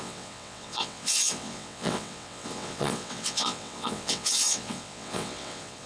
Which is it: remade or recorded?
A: remade